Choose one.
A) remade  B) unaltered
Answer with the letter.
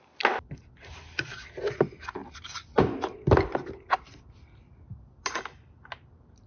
B